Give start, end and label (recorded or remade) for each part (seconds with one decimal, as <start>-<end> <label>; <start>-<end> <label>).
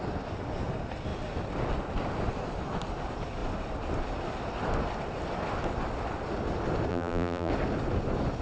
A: 0.0-6.9 recorded; 6.9-7.5 remade; 7.5-8.4 recorded